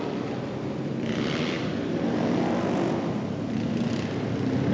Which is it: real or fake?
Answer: real